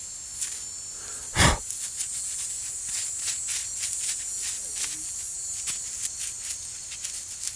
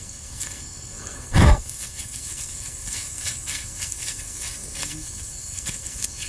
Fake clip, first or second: second